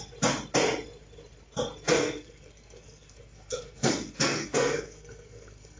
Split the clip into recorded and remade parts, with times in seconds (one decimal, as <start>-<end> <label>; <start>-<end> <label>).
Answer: 0.0-1.9 recorded; 1.9-5.8 remade